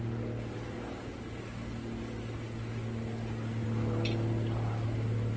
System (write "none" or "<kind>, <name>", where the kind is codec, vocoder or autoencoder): none